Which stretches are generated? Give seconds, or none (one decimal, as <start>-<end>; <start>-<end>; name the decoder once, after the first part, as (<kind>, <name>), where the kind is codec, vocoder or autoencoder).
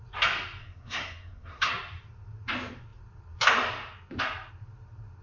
0.6-1.7 (codec, SNAC)